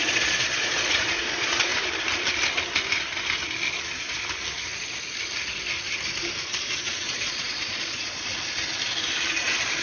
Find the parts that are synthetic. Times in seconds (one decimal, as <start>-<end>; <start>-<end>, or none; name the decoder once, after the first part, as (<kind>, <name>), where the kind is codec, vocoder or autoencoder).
0.0-1.7 (vocoder, Vocos); 6.4-8.3; 9.4-9.8